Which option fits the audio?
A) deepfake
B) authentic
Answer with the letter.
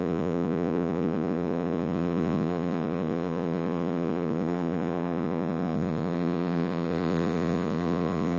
A